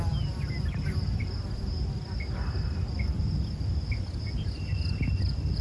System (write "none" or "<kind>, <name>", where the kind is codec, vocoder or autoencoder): none